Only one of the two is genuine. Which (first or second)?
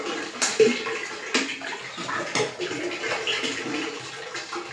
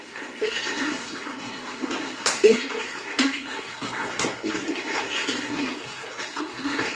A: first